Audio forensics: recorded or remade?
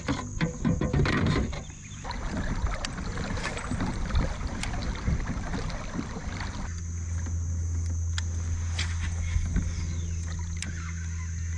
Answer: recorded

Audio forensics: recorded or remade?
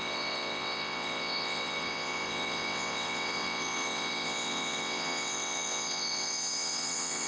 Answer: remade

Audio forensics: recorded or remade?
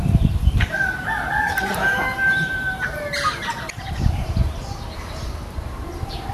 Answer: remade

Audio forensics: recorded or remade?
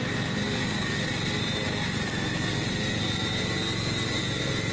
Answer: recorded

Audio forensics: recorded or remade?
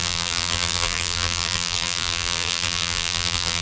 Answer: remade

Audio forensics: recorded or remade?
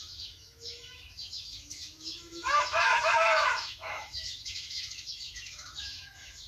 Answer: remade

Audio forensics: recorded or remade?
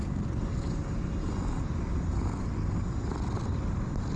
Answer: recorded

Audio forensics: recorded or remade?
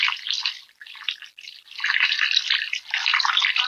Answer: remade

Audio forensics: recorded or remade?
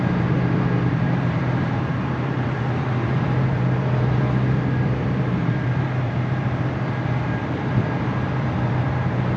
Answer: remade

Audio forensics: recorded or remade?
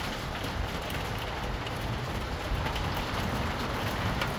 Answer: recorded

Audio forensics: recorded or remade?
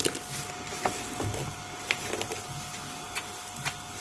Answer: recorded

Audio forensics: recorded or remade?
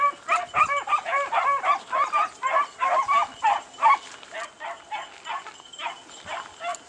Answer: recorded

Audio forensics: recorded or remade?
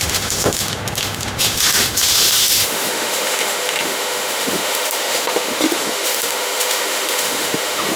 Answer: remade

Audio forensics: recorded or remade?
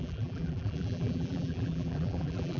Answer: remade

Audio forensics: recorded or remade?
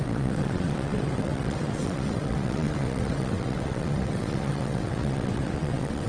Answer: remade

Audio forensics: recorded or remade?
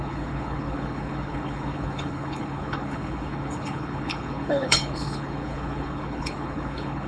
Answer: remade